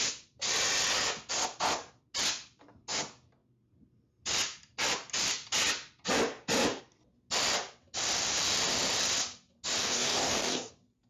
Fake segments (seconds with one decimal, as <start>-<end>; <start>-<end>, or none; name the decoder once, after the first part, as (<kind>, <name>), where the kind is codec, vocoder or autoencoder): 9.8-10.7 (codec, DAC)